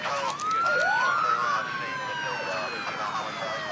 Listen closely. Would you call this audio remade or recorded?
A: recorded